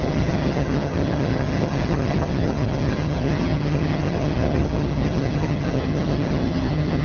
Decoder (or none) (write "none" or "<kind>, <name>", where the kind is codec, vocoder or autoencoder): vocoder, HiFi-GAN